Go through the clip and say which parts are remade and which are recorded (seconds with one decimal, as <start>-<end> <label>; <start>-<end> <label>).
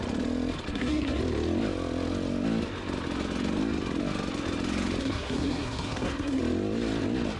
0.0-0.7 recorded; 0.7-1.2 remade; 1.2-5.0 recorded; 5.0-6.4 remade; 6.4-7.4 recorded